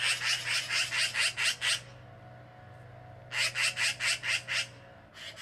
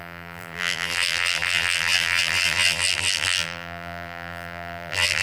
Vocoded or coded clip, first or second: second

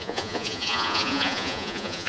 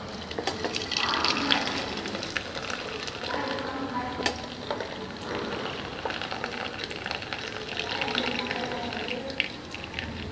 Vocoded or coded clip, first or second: first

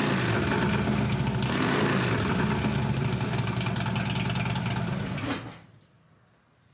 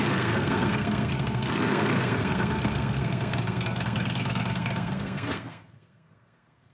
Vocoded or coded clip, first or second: second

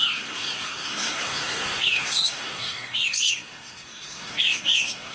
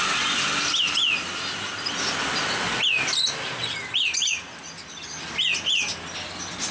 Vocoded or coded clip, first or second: first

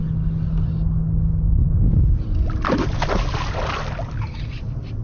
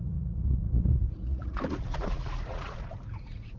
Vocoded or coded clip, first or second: second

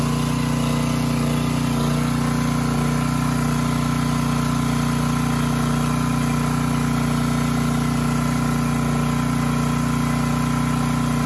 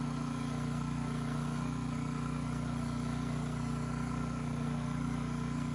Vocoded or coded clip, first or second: second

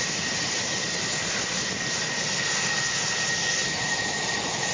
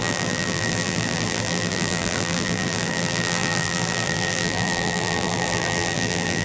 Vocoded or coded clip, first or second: second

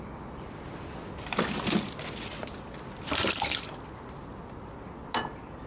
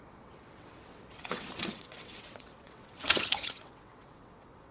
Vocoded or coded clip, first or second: second